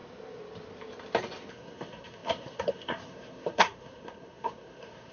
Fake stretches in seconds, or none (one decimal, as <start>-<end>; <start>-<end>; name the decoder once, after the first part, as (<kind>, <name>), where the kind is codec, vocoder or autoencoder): 1.5-5.1 (codec, SNAC)